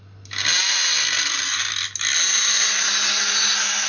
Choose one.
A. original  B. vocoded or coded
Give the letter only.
A